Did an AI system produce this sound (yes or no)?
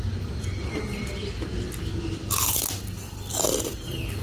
no